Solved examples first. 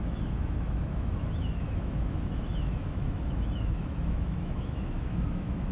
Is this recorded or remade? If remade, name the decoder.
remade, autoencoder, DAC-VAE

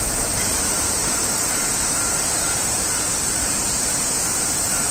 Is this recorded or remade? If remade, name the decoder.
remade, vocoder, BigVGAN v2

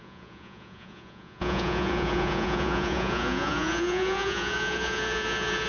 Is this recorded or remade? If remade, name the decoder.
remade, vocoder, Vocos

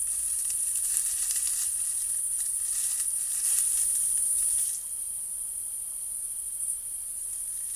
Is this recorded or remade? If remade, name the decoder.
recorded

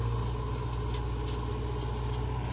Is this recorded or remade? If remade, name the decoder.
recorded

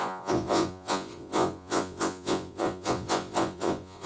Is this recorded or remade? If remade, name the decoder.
remade, vocoder, Vocos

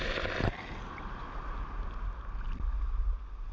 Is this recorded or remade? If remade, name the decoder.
recorded